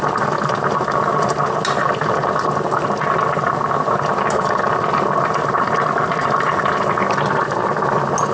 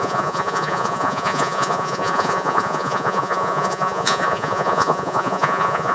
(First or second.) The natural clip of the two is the first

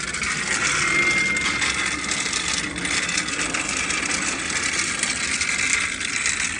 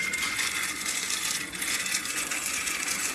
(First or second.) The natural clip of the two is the first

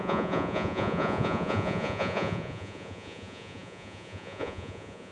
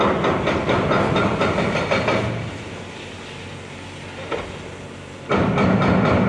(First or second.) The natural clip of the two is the second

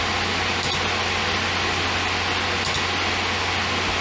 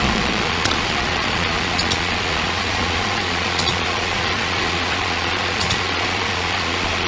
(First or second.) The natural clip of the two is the first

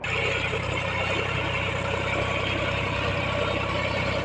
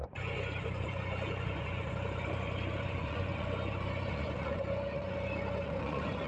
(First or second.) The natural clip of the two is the first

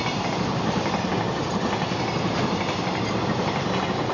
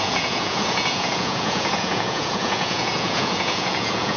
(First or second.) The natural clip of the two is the first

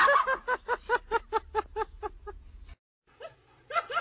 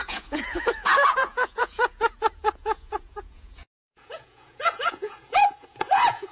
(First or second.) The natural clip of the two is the first